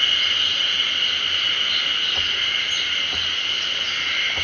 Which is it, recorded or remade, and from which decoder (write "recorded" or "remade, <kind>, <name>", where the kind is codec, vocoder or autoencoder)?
recorded